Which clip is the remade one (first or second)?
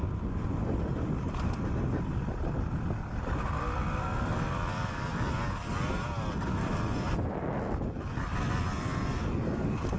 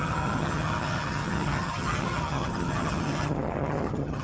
second